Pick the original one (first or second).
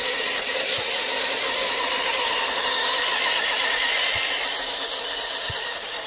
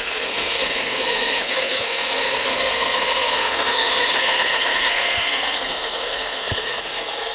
first